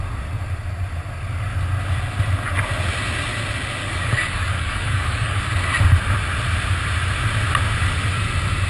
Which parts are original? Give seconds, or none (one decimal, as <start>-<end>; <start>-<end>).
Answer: 0.0-3.8; 5.4-8.7